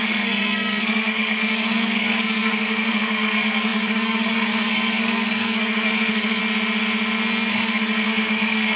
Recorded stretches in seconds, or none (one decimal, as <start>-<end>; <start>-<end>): 6.4-7.5